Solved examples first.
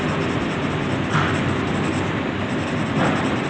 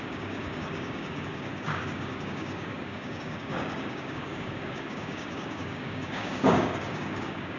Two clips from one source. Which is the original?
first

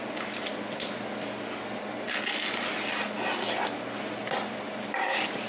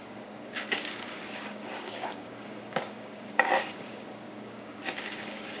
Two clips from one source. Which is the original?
first